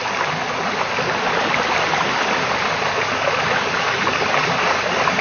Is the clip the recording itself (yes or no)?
yes